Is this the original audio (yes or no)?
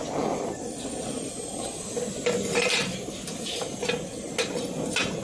yes